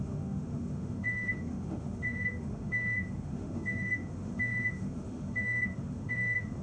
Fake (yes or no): yes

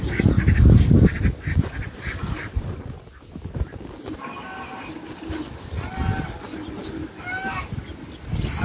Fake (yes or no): no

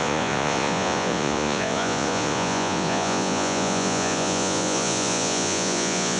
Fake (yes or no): yes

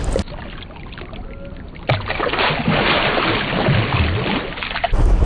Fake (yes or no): no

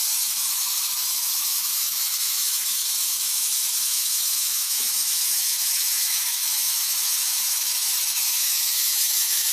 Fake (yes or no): yes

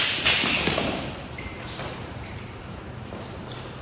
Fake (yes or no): yes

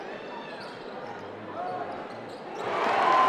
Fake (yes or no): no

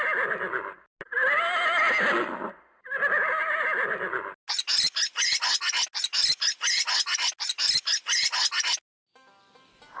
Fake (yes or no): no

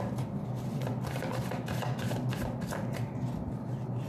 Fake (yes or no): no